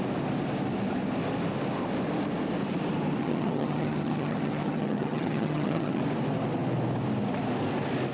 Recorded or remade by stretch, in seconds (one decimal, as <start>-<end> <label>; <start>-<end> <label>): 0.0-3.2 recorded; 3.2-6.0 remade; 6.0-8.1 recorded